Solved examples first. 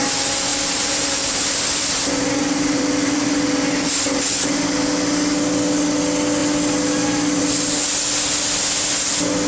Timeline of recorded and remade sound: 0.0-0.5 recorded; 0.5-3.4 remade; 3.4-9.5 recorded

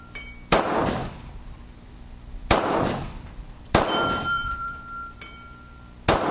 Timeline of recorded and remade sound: 0.0-1.0 recorded; 1.0-4.8 remade; 4.8-6.3 recorded

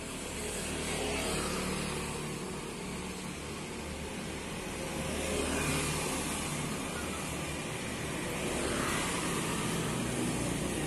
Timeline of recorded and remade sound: 0.0-10.9 recorded

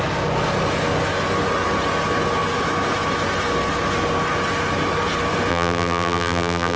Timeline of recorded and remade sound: 0.0-5.5 recorded; 5.5-6.8 remade